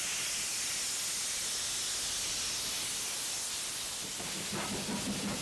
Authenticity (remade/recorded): recorded